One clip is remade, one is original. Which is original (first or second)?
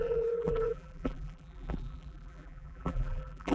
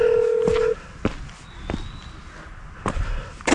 second